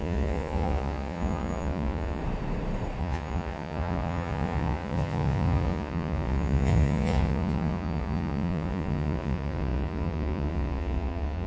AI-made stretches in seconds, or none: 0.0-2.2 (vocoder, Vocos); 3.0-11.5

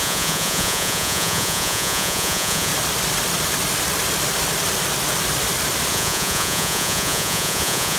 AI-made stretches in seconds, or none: 0.0-2.7 (vocoder, Vocos); 5.9-8.0

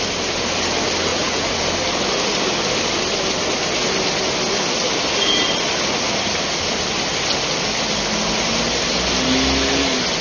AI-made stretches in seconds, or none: 1.1-1.6 (vocoder, Vocos)

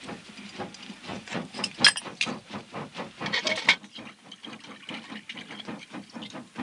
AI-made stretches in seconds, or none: 1.1-1.8 (vocoder, Vocos)

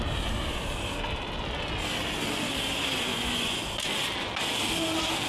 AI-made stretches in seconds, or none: 3.1-3.6 (vocoder, Vocos)